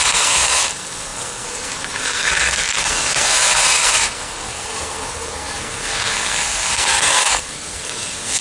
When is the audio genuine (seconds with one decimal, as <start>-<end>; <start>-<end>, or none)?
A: none